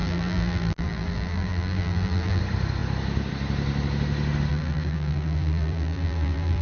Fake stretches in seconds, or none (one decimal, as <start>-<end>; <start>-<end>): 0.0-2.4; 4.5-6.6